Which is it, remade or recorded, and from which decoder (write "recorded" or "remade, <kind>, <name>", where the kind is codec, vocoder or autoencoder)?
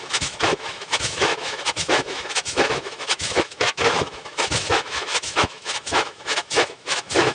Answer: remade, autoencoder, DAC-VAE